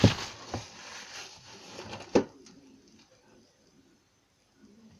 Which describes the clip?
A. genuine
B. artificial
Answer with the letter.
A